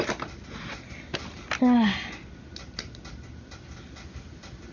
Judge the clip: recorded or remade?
recorded